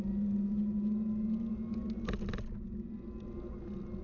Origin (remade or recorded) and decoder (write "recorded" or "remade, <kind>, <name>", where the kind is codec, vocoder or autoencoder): recorded